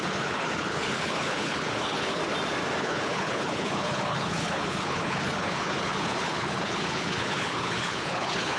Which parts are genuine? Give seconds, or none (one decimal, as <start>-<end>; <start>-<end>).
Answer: 2.2-2.8